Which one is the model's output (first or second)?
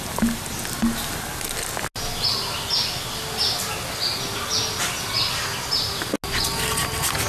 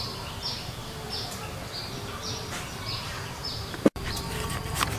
second